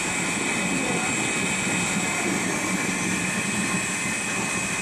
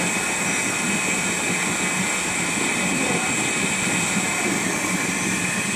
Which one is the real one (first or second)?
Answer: first